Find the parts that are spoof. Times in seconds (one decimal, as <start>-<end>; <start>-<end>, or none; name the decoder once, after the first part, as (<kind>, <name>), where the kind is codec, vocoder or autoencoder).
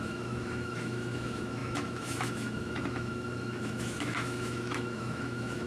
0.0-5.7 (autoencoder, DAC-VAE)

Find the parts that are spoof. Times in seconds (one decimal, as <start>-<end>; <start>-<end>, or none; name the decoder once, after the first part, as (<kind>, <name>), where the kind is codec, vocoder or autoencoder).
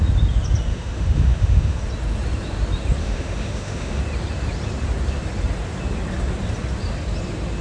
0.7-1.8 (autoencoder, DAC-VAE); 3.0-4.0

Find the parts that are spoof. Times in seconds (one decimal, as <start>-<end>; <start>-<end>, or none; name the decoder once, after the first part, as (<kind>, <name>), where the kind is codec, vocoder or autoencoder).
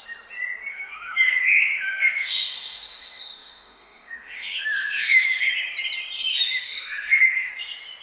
0.7-5.5 (autoencoder, DAC-VAE); 6.3-7.5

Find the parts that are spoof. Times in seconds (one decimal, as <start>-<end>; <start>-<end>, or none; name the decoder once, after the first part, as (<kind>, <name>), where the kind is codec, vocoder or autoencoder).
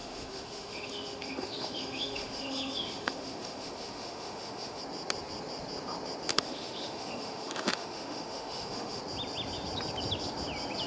0.0-4.8 (autoencoder, DAC-VAE); 6.3-9.0